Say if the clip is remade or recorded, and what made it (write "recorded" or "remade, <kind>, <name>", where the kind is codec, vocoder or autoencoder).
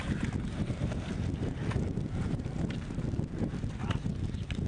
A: recorded